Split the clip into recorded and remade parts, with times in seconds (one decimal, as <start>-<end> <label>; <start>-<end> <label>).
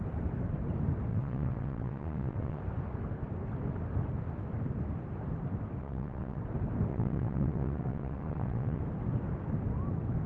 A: 0.0-1.1 recorded; 1.1-2.6 remade; 2.6-5.8 recorded; 5.8-6.4 remade; 6.4-6.9 recorded; 6.9-8.8 remade; 8.8-10.3 recorded